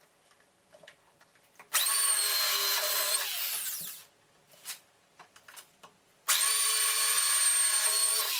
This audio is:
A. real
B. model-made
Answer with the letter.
A